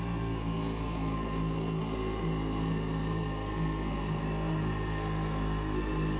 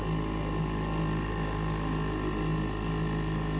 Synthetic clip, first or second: first